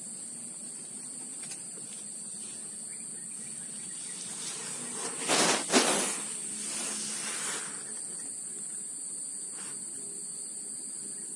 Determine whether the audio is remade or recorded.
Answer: recorded